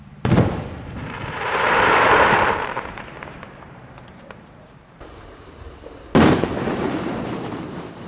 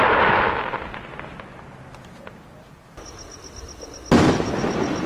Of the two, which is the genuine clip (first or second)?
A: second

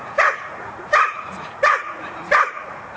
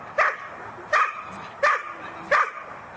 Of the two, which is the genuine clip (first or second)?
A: second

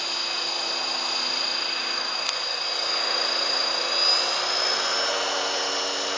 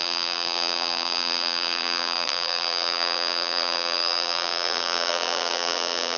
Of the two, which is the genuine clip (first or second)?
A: first